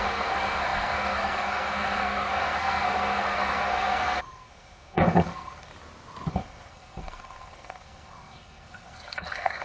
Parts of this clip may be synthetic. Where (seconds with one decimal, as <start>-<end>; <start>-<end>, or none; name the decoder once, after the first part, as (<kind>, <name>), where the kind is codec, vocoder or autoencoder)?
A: 0.0-5.7 (codec, SNAC); 6.3-9.6